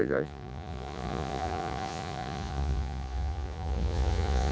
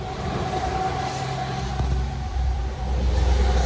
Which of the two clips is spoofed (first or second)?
first